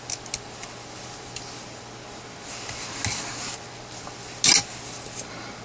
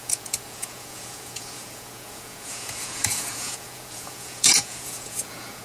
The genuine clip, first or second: first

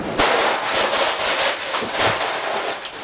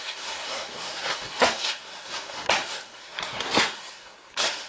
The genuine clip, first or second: first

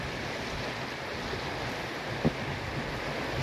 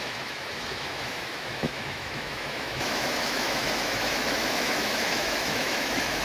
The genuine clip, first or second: first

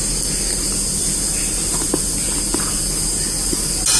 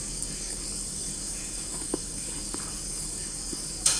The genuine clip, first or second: first